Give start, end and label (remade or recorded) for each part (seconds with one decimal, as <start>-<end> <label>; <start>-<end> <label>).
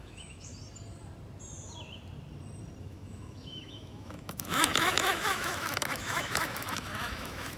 0.0-0.5 remade; 0.5-2.8 recorded; 2.8-7.6 remade